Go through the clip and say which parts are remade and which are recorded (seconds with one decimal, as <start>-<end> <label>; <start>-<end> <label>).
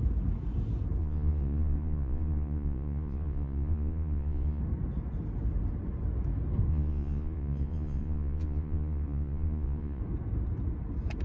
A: 0.0-1.0 recorded; 1.0-4.6 remade; 4.6-6.7 recorded; 6.7-10.0 remade; 10.0-11.2 recorded